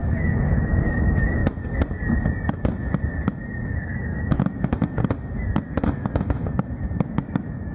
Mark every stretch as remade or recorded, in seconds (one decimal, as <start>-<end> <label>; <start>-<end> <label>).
0.0-1.4 remade; 1.4-3.7 recorded; 3.7-4.7 remade; 4.7-6.7 recorded; 6.7-7.7 remade